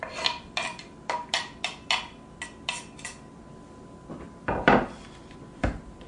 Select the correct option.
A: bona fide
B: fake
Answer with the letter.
A